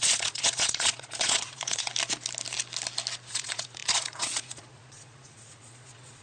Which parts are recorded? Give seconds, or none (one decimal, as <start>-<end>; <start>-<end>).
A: 1.9-3.3